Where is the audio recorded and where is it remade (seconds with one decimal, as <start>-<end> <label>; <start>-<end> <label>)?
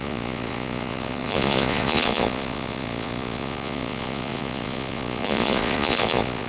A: 0.0-6.5 remade